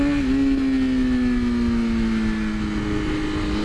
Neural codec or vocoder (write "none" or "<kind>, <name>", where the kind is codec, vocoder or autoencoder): none